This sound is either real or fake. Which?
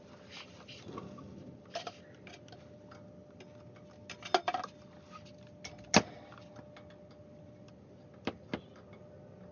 real